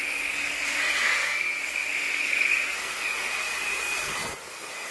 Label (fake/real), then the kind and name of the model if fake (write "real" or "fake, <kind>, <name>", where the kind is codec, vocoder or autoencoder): fake, codec, SNAC